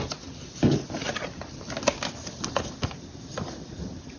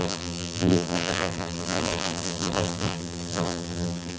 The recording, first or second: first